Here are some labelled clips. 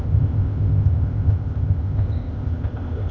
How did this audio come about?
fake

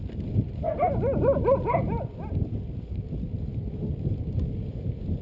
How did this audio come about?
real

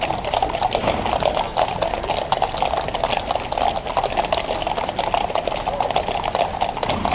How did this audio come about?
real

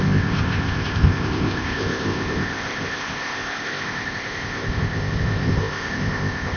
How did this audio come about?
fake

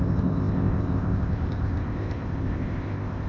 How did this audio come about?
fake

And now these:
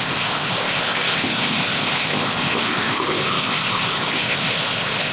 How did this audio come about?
fake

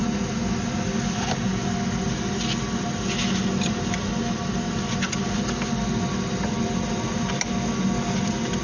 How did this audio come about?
real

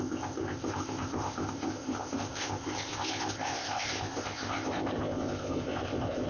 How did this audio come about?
fake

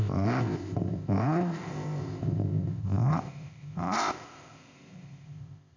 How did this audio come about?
fake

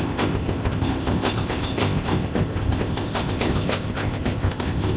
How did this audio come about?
fake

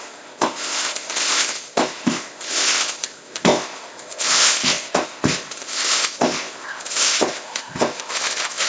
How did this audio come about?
fake